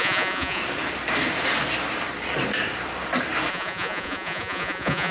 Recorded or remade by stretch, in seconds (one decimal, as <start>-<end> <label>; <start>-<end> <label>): 0.0-0.6 remade; 0.6-3.5 recorded; 3.5-5.1 remade